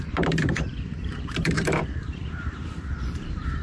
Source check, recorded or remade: remade